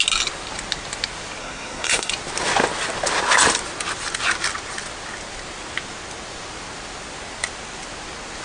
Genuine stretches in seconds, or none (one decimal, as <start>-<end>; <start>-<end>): 0.0-1.4; 2.1-8.4